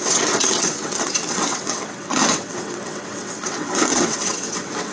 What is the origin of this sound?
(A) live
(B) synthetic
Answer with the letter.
B